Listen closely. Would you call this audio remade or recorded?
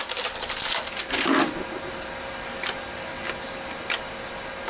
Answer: remade